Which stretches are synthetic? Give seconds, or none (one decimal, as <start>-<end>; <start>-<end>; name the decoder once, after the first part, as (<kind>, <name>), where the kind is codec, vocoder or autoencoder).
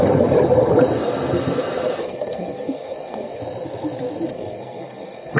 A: 2.0-3.4 (codec, SNAC); 4.3-5.4